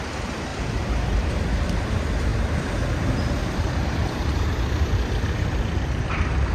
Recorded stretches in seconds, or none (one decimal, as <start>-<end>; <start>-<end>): 2.3-3.5; 4.5-5.4